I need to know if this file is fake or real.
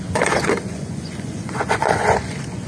fake